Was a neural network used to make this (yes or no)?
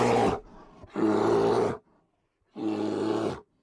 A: no